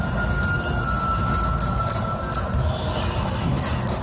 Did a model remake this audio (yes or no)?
no